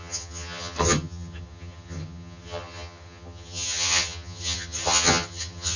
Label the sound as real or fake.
fake